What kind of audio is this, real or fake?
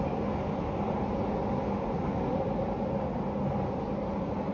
real